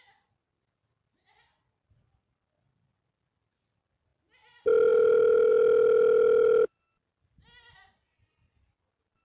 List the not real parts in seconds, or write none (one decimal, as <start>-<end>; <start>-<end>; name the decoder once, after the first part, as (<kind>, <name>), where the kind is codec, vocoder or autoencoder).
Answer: none